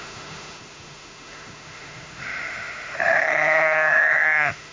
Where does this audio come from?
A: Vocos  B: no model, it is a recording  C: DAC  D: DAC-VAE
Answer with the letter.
D